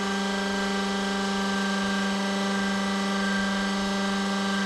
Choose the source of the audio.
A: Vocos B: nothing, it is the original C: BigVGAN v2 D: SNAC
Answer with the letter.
B